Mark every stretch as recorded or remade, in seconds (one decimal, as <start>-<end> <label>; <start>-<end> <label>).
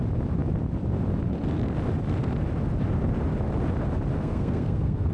0.0-4.2 recorded; 4.2-5.1 remade